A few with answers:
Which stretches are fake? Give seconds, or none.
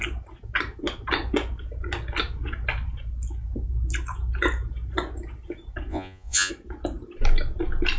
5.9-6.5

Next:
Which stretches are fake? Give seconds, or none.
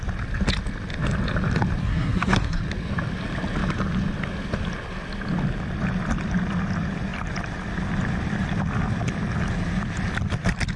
1.8-2.6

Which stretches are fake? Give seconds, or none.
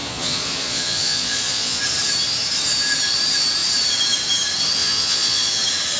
0.0-1.8; 4.8-5.5